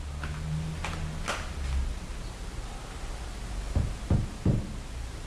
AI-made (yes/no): no